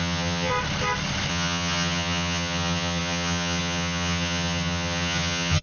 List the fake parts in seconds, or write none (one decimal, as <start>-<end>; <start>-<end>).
0.0-0.5; 1.3-5.6